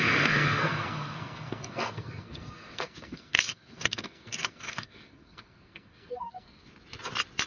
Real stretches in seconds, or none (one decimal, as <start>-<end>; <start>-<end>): 6.6-7.5